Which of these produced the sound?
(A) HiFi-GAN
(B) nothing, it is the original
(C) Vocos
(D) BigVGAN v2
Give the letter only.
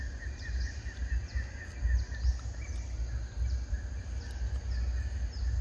B